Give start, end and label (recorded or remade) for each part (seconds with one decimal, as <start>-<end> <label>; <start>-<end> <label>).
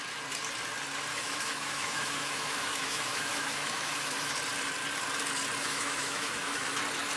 0.0-1.1 recorded; 1.1-4.3 remade; 4.3-5.6 recorded; 5.6-6.8 remade; 6.8-7.2 recorded